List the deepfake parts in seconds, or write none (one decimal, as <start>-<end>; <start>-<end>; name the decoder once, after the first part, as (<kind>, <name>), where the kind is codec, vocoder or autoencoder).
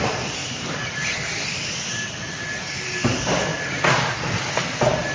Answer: none